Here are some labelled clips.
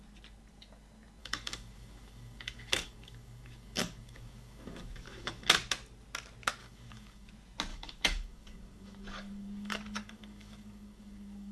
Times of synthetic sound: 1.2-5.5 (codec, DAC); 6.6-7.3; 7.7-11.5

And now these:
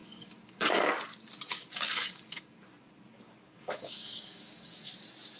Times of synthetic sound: 0.0-0.8 (codec, DAC); 1.5-2.6; 3.1-5.0

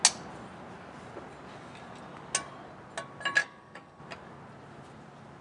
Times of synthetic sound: 3.4-4.0 (codec, DAC)

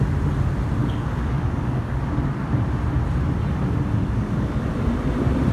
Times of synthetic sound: 0.8-2.0 (codec, DAC); 4.0-4.6

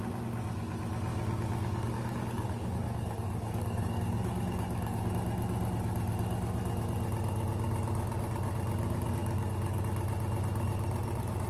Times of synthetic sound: 1.1-5.1 (codec, DAC); 9.2-9.8